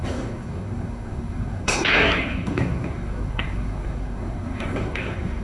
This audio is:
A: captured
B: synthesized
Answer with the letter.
B